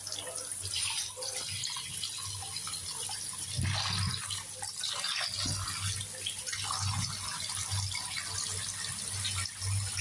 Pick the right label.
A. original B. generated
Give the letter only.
A